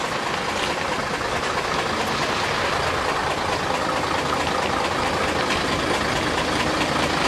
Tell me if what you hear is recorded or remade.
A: recorded